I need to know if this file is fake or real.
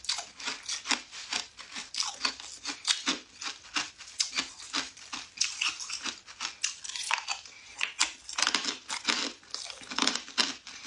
real